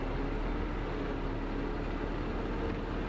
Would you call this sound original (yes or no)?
yes